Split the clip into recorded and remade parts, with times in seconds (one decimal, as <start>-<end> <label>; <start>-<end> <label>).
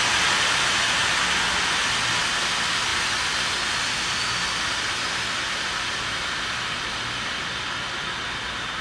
0.0-8.8 recorded